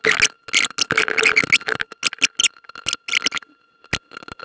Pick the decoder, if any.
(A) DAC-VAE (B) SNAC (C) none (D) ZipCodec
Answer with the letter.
C